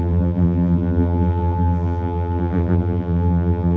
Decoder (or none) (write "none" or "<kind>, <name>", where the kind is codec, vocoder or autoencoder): vocoder, BigVGAN v2